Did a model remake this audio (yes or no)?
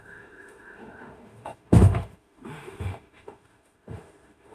yes